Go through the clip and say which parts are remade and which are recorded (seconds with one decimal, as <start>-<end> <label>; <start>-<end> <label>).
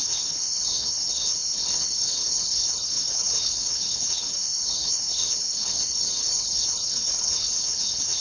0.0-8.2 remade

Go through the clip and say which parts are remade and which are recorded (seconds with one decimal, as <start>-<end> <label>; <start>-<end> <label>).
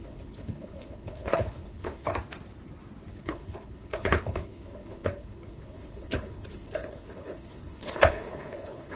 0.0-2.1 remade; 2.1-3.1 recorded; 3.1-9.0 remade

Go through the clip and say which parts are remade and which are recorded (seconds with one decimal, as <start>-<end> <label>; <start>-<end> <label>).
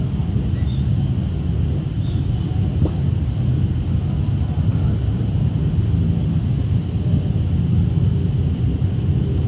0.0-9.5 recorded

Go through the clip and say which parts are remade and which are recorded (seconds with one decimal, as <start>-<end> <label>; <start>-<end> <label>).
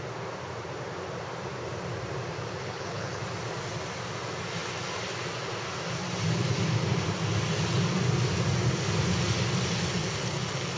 0.0-2.6 recorded; 2.6-3.2 remade; 3.2-10.8 recorded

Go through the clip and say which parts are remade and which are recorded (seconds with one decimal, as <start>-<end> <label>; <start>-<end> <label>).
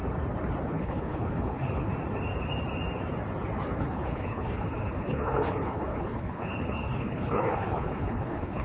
0.0-0.7 recorded; 0.7-1.9 remade; 1.9-3.8 recorded; 3.8-8.6 remade